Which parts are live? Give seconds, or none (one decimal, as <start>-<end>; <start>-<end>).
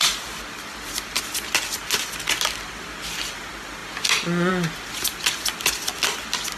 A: 0.0-6.6